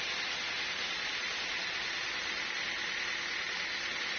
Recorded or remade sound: recorded